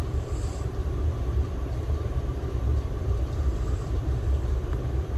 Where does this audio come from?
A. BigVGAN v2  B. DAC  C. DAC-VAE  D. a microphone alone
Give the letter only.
A